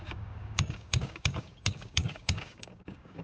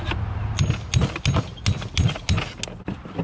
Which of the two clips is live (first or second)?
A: second